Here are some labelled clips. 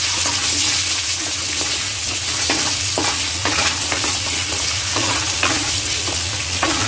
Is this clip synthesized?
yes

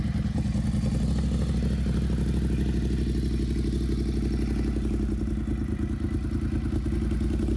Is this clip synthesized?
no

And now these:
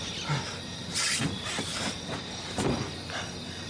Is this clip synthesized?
no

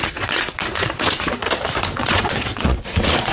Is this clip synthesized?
yes